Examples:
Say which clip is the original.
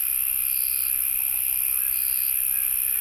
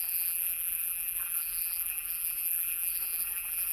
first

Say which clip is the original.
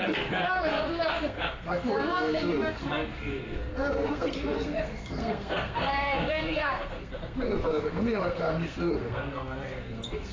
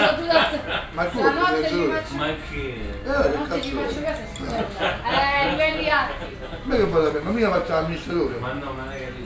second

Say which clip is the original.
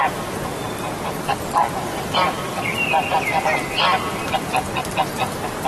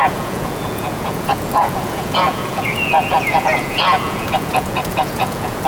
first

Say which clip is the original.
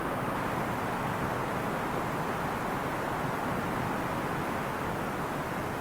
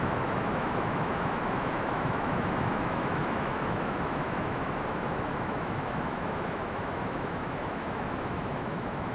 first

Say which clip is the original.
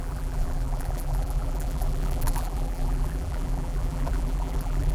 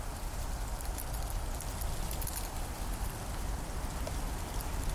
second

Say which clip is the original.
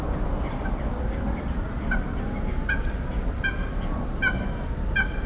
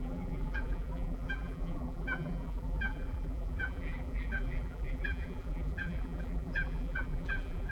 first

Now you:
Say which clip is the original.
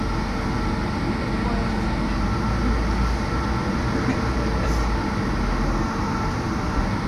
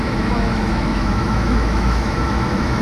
first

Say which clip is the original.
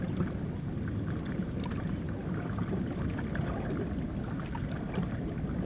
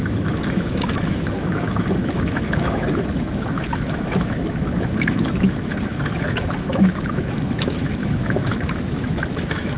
first